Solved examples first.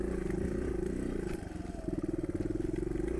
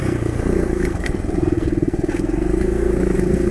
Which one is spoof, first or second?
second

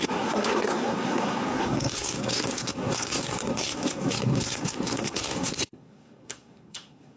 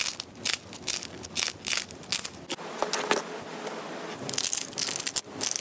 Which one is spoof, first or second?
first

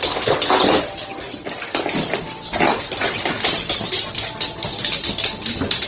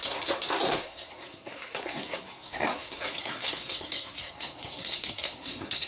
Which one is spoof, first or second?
second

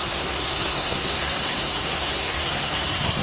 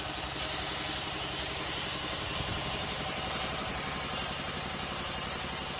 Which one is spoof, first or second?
first